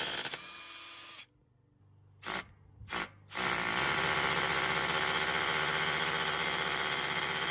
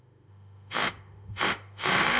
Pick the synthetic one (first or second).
second